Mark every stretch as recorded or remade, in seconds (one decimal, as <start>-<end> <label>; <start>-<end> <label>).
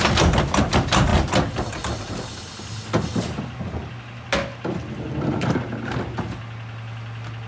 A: 0.0-7.5 recorded